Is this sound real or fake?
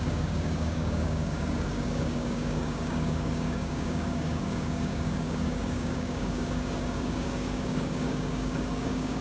fake